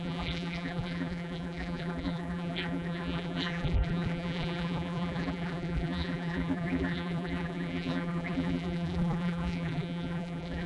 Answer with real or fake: fake